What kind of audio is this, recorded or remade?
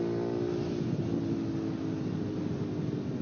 recorded